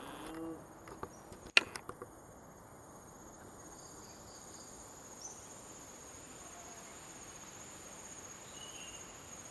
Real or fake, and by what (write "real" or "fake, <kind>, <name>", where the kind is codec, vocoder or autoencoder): real